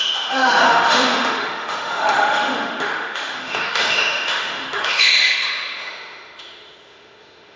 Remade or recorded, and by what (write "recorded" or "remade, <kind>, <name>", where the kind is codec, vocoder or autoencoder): remade, autoencoder, DAC-VAE